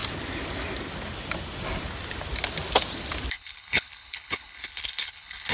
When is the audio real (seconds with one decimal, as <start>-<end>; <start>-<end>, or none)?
0.0-3.3